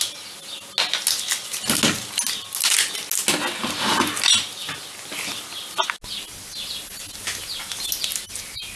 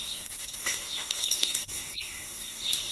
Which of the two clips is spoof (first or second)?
second